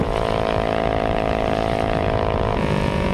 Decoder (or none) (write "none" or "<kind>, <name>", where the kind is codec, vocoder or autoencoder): vocoder, Vocos